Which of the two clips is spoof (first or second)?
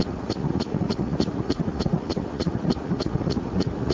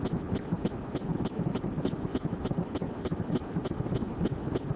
first